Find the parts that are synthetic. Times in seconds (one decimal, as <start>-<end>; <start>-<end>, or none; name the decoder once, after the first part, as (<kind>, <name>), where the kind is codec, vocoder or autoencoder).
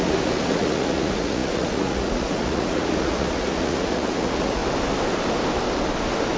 0.0-4.6 (vocoder, Vocos)